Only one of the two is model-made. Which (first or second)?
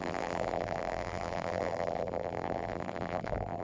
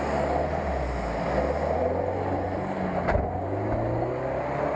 first